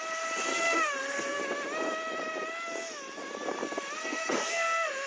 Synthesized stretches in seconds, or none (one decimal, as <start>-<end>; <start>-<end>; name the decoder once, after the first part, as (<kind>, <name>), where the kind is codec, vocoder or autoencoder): 0.5-1.4 (codec, SNAC); 4.0-5.1